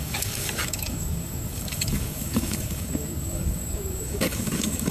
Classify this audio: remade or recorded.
remade